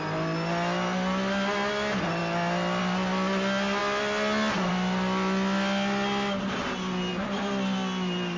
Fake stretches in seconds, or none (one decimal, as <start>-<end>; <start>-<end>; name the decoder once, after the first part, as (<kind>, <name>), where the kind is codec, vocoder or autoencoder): none